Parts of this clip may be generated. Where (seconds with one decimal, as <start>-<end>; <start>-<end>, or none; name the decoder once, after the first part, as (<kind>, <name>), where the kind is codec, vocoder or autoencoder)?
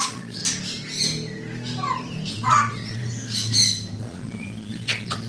0.0-0.4 (vocoder, Vocos); 2.3-3.0; 4.0-5.3